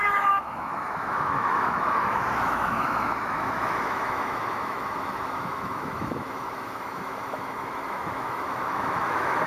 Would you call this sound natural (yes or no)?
no